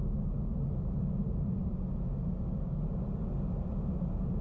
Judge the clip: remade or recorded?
recorded